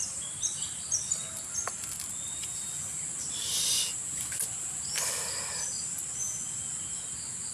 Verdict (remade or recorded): recorded